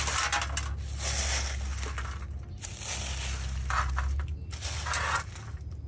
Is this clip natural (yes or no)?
yes